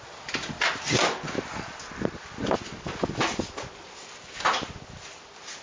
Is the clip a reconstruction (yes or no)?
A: no